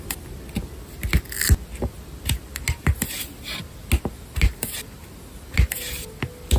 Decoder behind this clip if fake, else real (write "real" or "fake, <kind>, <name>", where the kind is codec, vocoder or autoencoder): real